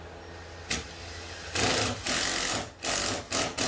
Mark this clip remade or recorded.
recorded